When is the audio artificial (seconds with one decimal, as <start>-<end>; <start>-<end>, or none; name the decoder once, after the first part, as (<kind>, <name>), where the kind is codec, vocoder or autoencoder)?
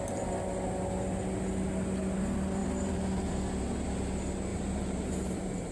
2.6-3.3 (vocoder, BigVGAN v2); 4.5-5.7